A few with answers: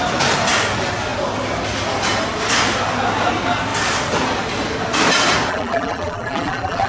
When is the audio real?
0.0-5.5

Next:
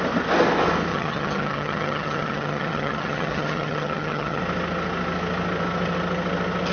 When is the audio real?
0.0-0.9; 4.4-6.7

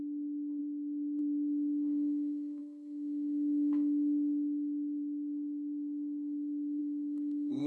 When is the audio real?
none

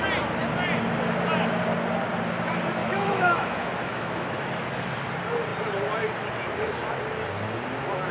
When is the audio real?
0.0-2.8; 4.6-8.1

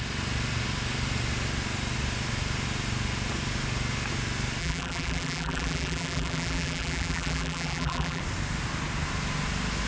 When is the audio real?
0.0-4.6; 8.2-9.9

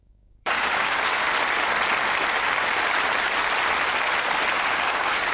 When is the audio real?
1.3-4.5

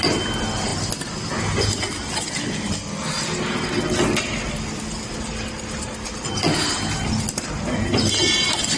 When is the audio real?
0.0-8.8